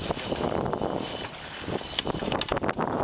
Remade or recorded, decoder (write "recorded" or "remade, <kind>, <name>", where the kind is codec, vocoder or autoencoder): recorded